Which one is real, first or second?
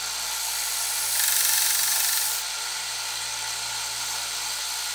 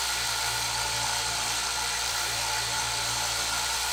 first